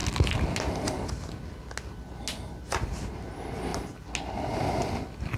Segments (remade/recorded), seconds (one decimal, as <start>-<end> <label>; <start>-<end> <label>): 0.0-5.4 recorded